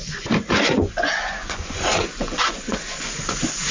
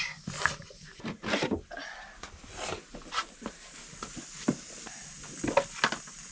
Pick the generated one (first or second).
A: first